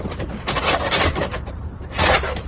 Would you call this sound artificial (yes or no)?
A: yes